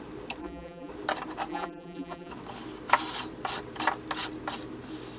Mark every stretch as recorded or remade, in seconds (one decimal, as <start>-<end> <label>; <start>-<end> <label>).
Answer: 0.0-0.4 recorded; 0.4-0.9 remade; 0.9-1.5 recorded; 1.5-2.3 remade; 2.3-5.2 recorded